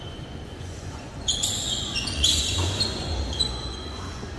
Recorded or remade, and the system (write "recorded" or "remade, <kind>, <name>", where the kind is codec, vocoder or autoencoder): remade, vocoder, Vocos